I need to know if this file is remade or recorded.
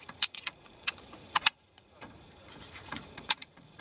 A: remade